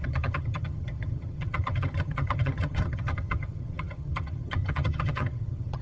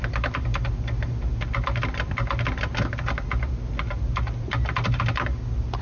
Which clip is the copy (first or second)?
first